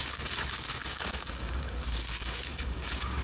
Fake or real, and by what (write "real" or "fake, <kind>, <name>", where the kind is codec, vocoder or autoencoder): fake, codec, DAC